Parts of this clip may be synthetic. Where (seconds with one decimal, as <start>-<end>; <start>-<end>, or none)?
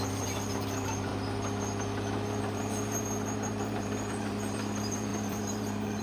0.0-1.1; 2.4-6.0